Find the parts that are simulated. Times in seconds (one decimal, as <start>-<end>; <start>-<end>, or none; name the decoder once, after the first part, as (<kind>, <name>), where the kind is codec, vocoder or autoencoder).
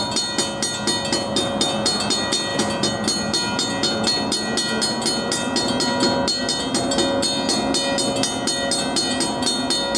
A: none